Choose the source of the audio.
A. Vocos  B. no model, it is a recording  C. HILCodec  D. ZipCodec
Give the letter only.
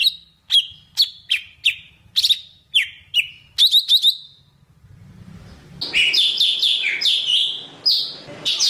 B